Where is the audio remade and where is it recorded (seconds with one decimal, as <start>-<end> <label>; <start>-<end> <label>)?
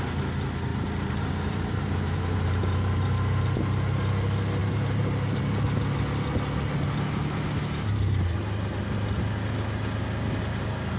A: 0.0-0.7 recorded; 0.7-3.4 remade; 3.4-4.6 recorded; 4.6-5.4 remade; 5.4-11.0 recorded